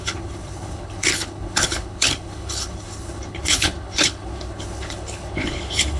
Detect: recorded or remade remade